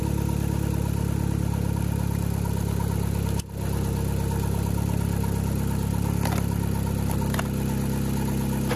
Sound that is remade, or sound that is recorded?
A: recorded